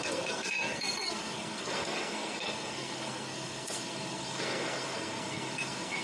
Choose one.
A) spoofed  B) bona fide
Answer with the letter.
A